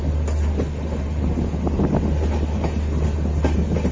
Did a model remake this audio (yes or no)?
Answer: no